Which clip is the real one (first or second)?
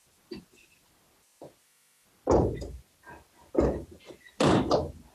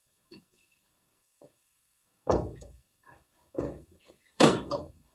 first